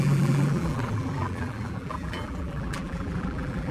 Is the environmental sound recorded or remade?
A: remade